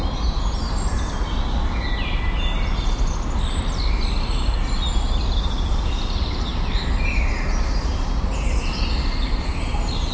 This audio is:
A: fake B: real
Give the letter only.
B